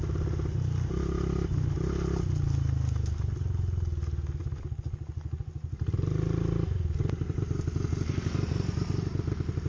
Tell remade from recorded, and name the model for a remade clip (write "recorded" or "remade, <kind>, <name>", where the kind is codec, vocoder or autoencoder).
recorded